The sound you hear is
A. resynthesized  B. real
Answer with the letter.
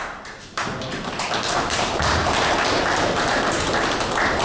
A